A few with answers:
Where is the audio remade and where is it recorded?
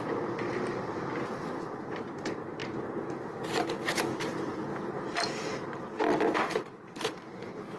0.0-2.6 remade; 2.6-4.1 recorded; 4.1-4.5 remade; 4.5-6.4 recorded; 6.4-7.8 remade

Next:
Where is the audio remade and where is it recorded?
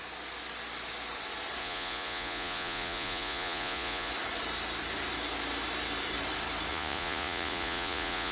0.0-1.6 recorded; 1.6-4.1 remade; 4.1-6.7 recorded; 6.7-8.3 remade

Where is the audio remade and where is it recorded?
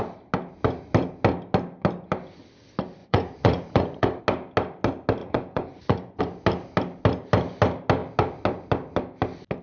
0.0-3.0 recorded; 3.0-4.2 remade; 4.2-5.2 recorded; 5.2-6.2 remade; 6.2-9.6 recorded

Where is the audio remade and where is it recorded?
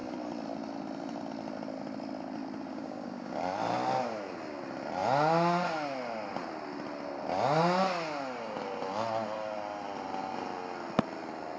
0.0-2.7 recorded; 2.7-3.3 remade; 3.3-11.6 recorded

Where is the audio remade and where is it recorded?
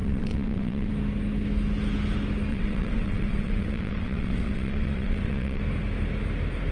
0.0-0.9 remade; 0.9-2.5 recorded; 2.5-5.6 remade; 5.6-6.7 recorded